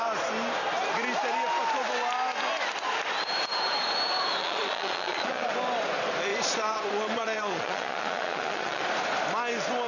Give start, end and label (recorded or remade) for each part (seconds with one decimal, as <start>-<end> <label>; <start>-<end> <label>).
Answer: 0.0-4.4 recorded; 4.4-5.5 remade; 5.5-6.3 recorded; 6.3-8.8 remade; 8.8-9.9 recorded